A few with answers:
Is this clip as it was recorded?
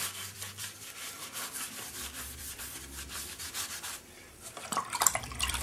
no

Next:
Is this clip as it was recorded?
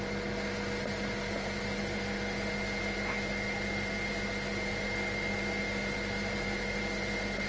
yes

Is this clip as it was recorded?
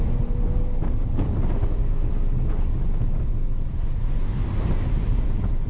yes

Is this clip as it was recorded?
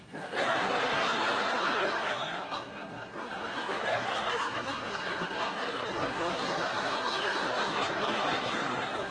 no